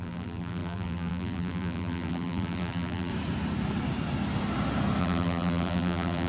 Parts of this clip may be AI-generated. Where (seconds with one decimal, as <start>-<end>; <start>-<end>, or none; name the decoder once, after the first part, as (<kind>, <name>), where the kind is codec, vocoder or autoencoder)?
0.0-3.1 (vocoder, BigVGAN v2); 5.0-6.3